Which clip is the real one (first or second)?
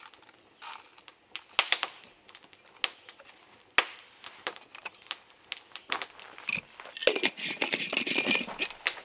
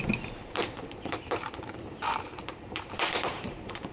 first